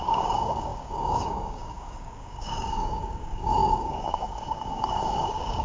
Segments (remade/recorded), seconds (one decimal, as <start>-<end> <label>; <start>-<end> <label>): 0.0-5.6 remade